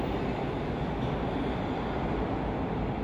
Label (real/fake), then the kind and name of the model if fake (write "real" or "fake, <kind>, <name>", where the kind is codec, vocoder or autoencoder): real